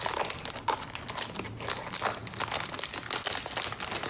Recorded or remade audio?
recorded